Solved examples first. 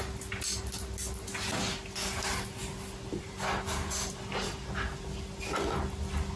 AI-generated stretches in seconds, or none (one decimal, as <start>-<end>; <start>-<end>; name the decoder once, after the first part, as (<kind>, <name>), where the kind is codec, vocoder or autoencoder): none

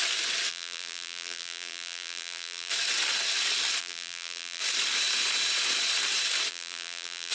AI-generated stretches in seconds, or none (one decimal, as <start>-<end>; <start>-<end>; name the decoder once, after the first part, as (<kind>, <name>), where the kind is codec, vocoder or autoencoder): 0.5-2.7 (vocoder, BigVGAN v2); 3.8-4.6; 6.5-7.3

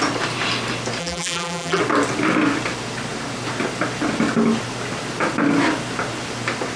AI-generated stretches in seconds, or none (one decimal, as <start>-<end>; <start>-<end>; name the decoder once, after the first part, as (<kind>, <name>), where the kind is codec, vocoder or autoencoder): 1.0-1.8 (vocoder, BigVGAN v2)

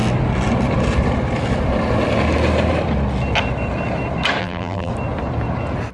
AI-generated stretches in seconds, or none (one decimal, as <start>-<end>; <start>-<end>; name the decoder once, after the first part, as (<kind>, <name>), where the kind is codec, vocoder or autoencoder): 4.4-4.9 (vocoder, BigVGAN v2)